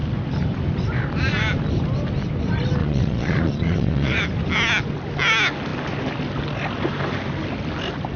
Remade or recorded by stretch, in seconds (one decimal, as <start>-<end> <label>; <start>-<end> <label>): 0.0-2.8 recorded; 2.8-4.2 remade; 4.2-8.2 recorded